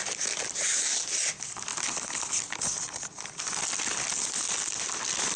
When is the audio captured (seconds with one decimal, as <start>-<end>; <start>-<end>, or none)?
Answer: 0.0-5.4